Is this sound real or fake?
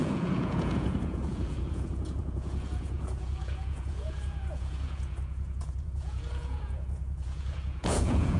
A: fake